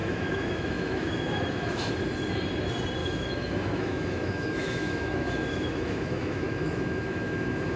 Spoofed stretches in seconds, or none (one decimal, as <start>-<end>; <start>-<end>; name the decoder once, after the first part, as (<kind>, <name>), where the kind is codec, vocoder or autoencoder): 0.0-1.9 (autoencoder, DAC-VAE); 3.0-7.8